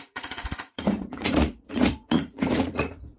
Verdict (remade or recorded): remade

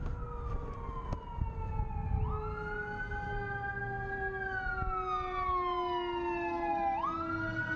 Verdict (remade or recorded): recorded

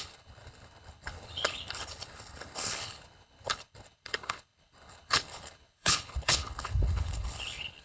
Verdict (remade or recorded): remade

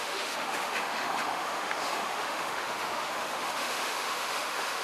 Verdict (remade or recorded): remade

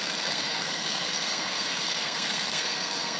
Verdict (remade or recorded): remade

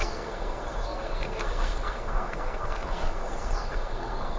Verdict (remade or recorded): remade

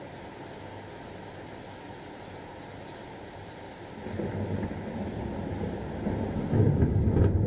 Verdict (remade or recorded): recorded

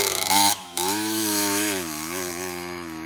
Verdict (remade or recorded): remade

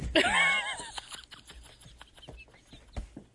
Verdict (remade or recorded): recorded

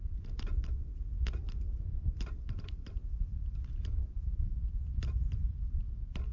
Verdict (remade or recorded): remade